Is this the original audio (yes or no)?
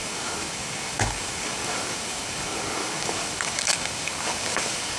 no